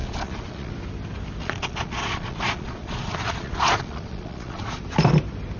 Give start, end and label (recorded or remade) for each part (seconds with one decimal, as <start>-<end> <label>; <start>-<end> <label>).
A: 0.0-0.7 remade; 0.7-1.4 recorded; 1.4-4.8 remade; 4.8-5.6 recorded